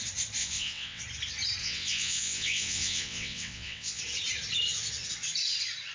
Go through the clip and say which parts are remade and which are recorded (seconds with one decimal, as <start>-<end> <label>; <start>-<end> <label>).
0.0-0.4 recorded; 0.4-1.0 remade; 1.0-1.6 recorded; 1.6-4.0 remade; 4.0-5.9 recorded